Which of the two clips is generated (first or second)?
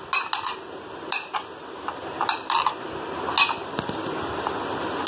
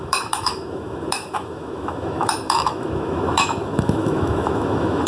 second